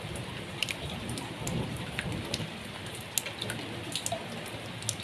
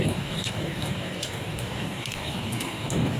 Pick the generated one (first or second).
second